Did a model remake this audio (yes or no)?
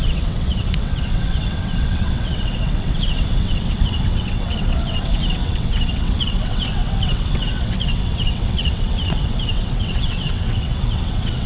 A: yes